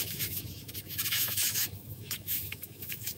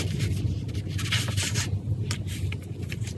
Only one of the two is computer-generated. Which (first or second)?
first